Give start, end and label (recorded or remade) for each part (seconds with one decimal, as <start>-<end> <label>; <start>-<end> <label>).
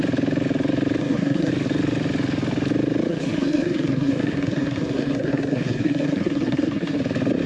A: 0.0-1.0 recorded; 1.0-1.5 remade; 1.5-3.1 recorded; 3.1-7.0 remade; 7.0-7.5 recorded